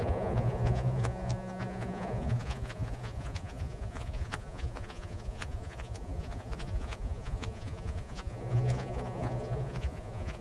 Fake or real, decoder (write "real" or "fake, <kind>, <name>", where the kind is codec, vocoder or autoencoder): fake, vocoder, Vocos